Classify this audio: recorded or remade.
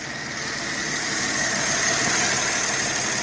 recorded